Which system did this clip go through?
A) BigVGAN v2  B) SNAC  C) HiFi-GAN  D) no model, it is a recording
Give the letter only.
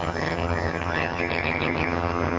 C